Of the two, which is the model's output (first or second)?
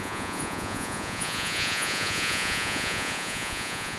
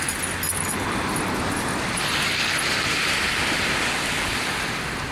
first